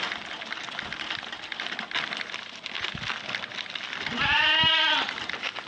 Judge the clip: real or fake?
real